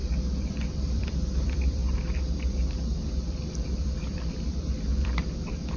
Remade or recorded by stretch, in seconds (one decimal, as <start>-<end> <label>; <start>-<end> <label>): 0.0-1.8 remade; 1.8-3.1 recorded; 3.1-5.8 remade